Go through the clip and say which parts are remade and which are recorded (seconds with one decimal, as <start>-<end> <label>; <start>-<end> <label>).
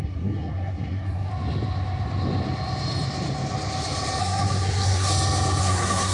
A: 0.0-1.3 remade; 1.3-4.2 recorded; 4.2-5.1 remade; 5.1-5.6 recorded; 5.6-6.1 remade